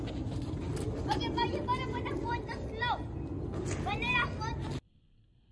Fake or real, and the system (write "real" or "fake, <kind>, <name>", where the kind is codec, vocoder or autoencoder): real